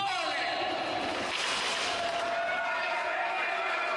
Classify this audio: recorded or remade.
remade